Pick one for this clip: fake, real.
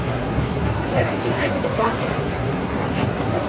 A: fake